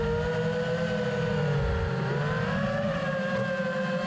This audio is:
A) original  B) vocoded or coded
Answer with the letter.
A